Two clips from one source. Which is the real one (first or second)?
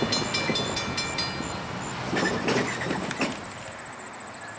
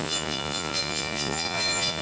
first